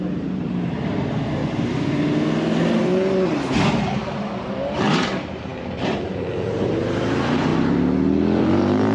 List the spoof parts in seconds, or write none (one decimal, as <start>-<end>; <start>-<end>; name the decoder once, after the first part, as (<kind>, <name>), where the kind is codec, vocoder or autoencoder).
0.0-1.4 (vocoder, BigVGAN v2); 3.8-7.5; 8.4-8.9